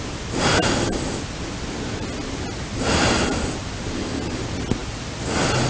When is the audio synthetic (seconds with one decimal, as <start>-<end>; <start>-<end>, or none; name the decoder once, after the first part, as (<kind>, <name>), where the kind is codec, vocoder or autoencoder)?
none